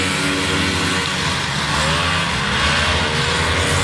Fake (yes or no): no